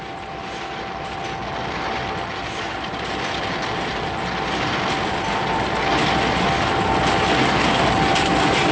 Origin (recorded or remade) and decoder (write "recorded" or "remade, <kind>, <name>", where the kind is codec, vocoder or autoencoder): recorded